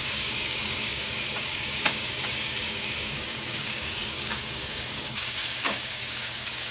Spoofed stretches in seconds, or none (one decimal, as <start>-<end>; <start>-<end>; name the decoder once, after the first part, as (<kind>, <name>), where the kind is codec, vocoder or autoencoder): 0.0-6.7 (codec, DAC)